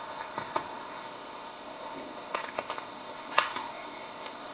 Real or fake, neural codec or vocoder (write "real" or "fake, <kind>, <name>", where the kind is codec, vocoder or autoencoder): fake, codec, ZipCodec